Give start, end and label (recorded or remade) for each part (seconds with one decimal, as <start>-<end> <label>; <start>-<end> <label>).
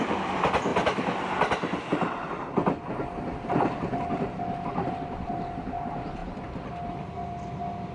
0.0-7.9 recorded